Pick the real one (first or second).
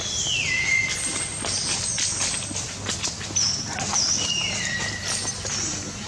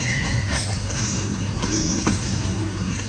first